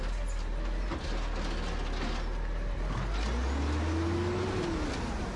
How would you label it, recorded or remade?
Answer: recorded